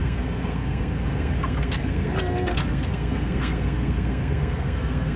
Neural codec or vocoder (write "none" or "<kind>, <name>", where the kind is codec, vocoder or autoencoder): codec, SNAC